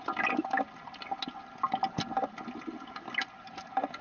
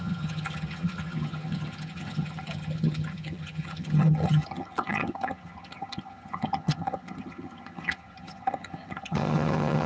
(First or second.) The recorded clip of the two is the first